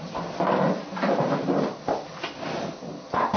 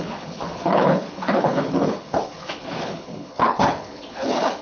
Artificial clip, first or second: second